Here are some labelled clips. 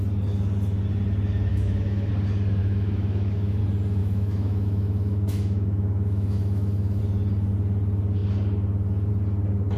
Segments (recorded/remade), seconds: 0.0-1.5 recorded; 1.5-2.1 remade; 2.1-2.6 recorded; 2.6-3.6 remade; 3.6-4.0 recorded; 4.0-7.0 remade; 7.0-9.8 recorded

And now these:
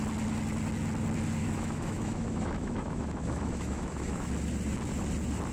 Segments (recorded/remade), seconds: 0.0-1.4 recorded; 1.4-4.3 remade; 4.3-5.5 recorded

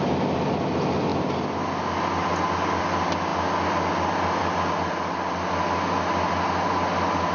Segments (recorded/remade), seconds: 0.0-7.3 recorded